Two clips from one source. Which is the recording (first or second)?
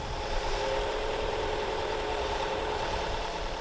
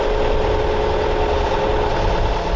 second